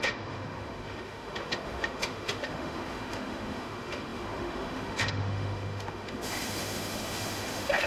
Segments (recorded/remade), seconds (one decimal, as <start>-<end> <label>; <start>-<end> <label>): 0.0-7.9 remade